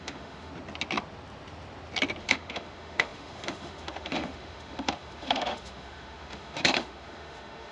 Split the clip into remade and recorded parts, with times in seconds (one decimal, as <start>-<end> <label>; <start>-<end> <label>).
0.0-0.5 remade; 0.5-2.2 recorded; 2.2-7.7 remade